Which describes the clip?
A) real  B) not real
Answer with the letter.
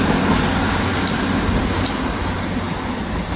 A